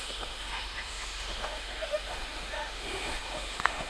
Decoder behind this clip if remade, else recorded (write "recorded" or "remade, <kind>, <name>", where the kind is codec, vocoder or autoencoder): remade, autoencoder, DAC-VAE